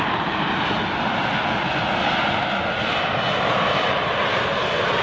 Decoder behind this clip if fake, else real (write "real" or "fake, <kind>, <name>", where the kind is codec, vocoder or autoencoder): real